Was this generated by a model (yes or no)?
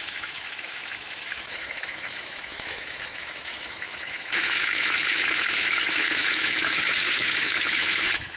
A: yes